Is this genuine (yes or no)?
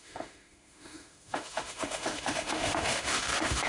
no